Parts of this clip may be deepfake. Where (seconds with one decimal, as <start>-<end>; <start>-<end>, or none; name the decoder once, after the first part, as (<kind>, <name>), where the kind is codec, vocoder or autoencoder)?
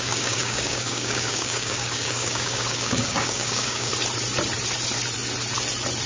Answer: 0.0-3.9 (codec, DAC)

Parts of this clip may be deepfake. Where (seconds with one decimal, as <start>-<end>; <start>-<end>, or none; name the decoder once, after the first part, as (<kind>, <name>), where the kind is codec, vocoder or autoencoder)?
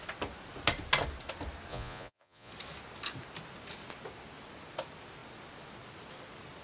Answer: 1.7-2.5 (vocoder, Vocos)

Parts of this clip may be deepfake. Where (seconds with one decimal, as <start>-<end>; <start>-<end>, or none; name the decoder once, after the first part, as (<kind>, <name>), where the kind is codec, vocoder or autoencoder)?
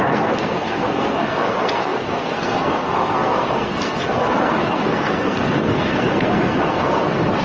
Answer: 0.0-7.4 (codec, SNAC)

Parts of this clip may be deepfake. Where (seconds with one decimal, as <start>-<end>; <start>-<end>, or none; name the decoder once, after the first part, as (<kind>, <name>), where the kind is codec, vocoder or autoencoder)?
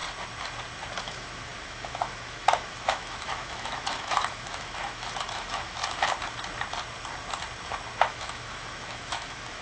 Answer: 1.0-5.8 (autoencoder, DAC-VAE); 8.0-9.6